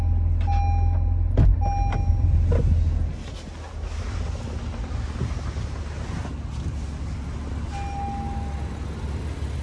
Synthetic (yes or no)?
no